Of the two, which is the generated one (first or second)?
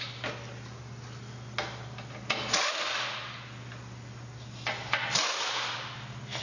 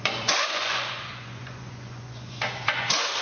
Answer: second